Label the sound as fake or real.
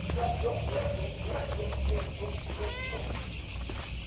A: real